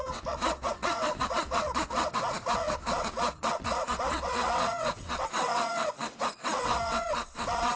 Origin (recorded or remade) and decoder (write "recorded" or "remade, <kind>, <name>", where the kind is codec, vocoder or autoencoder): remade, vocoder, WaveNeXt